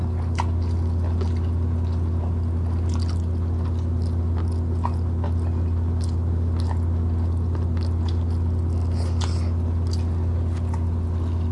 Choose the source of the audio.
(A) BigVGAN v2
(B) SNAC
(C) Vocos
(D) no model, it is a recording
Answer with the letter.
D